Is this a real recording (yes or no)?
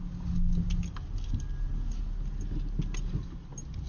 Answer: yes